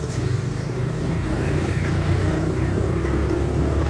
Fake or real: fake